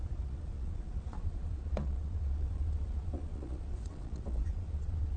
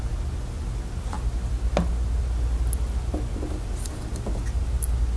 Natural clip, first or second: second